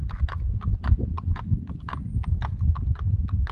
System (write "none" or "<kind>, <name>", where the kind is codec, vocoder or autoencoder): none